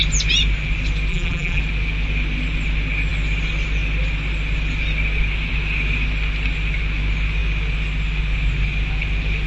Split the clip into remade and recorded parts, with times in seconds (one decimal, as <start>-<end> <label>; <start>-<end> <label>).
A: 0.0-1.1 recorded; 1.1-1.6 remade; 1.6-9.5 recorded